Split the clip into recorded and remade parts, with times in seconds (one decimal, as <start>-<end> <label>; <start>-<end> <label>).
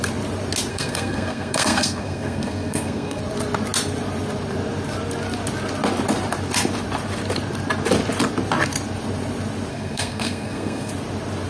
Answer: 0.0-0.7 recorded; 0.7-3.2 remade; 3.2-9.7 recorded; 9.7-10.9 remade; 10.9-11.5 recorded